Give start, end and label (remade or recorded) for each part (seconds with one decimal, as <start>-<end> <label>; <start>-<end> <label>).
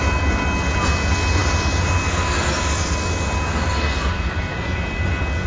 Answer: 0.0-5.5 recorded